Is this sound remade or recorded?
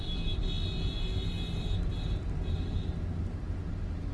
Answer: recorded